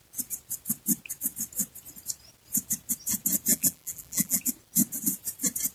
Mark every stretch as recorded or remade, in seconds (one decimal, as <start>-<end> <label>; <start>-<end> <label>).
0.0-3.5 recorded; 3.5-4.4 remade; 4.4-5.7 recorded